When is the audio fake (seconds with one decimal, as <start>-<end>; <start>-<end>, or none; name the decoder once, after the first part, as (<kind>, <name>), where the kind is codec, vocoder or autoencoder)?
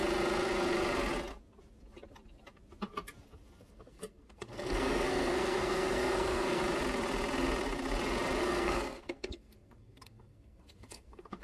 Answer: 3.7-6.6 (codec, SNAC); 8.4-11.4